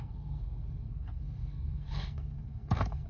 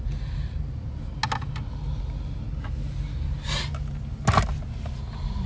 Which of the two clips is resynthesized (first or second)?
first